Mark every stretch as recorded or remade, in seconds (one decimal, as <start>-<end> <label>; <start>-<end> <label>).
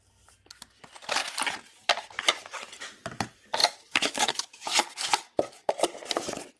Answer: 0.0-3.6 recorded; 3.6-5.7 remade; 5.7-6.6 recorded